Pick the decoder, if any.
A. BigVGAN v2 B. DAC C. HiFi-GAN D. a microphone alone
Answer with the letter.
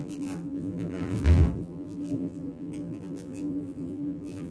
A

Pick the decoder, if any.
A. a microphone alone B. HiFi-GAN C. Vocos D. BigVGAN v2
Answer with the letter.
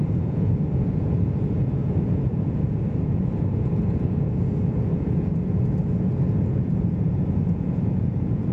C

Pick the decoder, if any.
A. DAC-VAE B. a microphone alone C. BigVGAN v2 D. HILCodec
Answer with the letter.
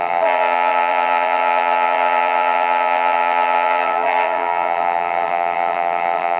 C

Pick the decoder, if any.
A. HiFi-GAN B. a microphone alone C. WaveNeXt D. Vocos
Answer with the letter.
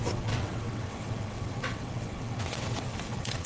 C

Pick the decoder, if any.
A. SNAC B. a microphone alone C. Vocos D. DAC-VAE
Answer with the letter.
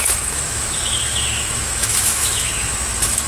D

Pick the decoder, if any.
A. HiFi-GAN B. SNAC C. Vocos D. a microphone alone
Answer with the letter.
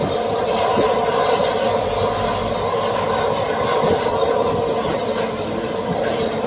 D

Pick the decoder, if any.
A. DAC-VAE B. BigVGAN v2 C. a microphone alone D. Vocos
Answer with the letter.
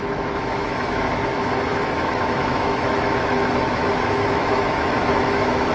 A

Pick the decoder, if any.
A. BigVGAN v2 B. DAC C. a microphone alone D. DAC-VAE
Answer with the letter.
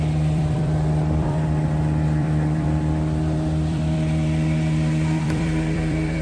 A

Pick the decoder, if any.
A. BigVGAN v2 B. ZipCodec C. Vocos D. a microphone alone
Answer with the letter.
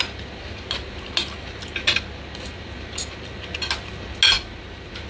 D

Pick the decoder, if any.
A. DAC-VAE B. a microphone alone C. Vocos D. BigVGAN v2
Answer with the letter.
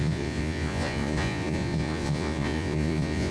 C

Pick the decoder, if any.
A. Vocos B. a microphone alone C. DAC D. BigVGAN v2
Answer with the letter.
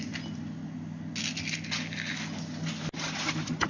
B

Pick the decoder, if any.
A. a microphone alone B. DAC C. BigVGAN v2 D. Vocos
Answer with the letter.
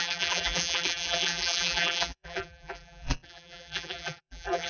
C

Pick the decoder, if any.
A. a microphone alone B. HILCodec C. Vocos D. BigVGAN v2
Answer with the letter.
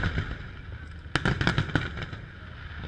A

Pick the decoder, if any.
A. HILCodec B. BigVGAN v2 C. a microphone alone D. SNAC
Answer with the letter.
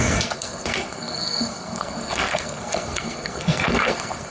D